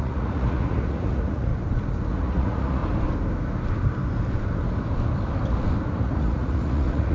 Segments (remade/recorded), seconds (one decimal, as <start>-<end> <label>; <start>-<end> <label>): 0.0-1.5 remade; 1.5-2.1 recorded; 2.1-2.8 remade; 2.8-6.0 recorded; 6.0-7.1 remade